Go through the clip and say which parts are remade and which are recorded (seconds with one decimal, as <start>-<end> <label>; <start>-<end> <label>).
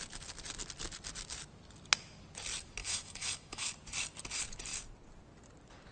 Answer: 0.0-2.8 recorded; 2.8-3.7 remade; 3.7-5.9 recorded